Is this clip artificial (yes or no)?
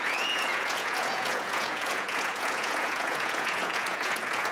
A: yes